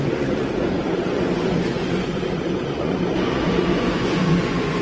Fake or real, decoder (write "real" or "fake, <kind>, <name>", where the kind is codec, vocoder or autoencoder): fake, vocoder, Vocos